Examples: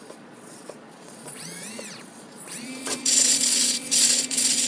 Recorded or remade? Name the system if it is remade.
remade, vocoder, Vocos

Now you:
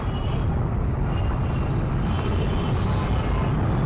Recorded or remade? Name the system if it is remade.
recorded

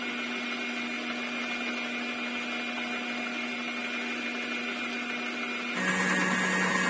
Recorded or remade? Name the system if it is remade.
recorded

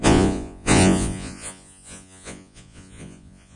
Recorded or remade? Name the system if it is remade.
remade, vocoder, Vocos